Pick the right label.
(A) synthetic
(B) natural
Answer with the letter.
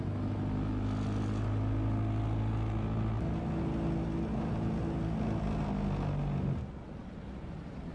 B